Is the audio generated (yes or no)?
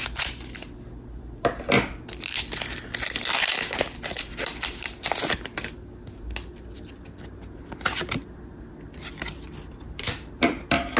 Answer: no